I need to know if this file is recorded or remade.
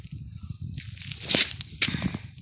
recorded